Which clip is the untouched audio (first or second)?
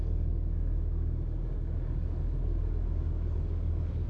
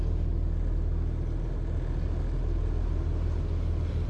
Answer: second